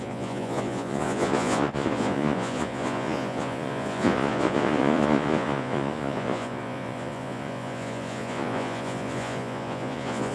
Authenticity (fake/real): fake